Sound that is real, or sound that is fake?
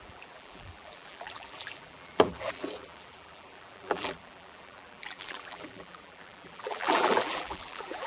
fake